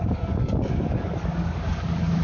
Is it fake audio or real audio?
fake